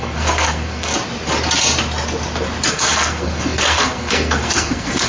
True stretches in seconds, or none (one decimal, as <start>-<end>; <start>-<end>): 0.9-2.7